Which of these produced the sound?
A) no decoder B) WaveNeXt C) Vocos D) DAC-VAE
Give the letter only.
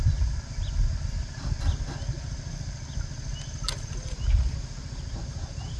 A